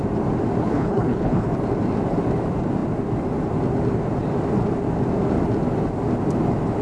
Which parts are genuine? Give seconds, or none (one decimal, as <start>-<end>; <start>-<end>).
0.0-0.6; 1.5-6.8